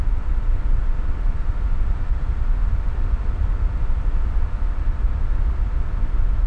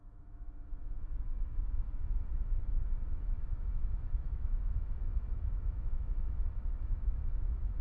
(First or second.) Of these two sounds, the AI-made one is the second